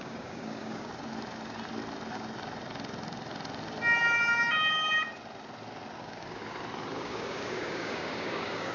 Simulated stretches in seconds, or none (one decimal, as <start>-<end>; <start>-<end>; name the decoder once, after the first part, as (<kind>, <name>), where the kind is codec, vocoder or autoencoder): 0.0-0.9 (codec, DAC); 6.0-6.4; 6.9-8.7

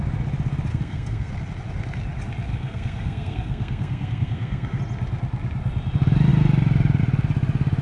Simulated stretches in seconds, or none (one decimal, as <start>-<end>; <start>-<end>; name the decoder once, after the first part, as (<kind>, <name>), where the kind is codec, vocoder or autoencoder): 0.7-1.3 (codec, SNAC); 2.5-4.8

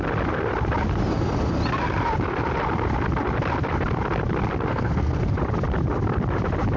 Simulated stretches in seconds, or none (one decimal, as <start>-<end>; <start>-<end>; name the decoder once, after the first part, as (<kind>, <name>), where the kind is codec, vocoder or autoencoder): 4.7-5.2 (codec, SNAC)

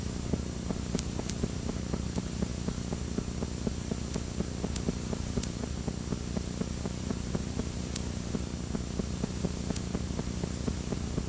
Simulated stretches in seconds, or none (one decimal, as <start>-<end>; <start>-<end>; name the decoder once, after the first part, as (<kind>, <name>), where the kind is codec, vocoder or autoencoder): 0.0-2.5 (vocoder, BigVGAN v2); 4.6-5.6; 7.0-8.5; 9.3-11.3

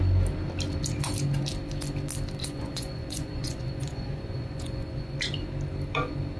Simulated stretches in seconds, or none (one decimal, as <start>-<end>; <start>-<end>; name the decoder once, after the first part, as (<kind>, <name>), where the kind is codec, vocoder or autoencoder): 2.4-5.2 (vocoder, Vocos)

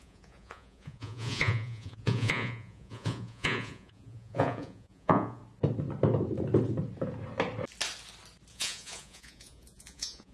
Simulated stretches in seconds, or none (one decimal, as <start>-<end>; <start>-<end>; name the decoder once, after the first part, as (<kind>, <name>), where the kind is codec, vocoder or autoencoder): 0.0-5.4 (vocoder, Vocos); 8.5-10.3